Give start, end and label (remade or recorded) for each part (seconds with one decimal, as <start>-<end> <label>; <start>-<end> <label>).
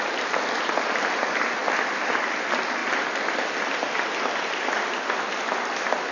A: 0.0-6.1 recorded